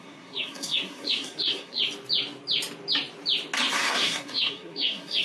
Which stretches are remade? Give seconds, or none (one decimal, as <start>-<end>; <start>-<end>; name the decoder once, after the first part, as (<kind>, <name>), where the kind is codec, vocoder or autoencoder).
0.0-1.8 (codec, SNAC); 3.7-5.2